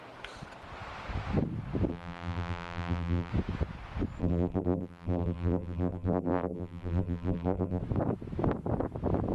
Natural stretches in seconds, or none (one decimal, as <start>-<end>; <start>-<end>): 0.0-1.9; 3.3-4.2; 7.8-9.3